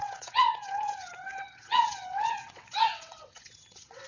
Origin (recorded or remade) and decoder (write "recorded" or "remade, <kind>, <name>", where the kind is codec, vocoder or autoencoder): remade, vocoder, WaveNeXt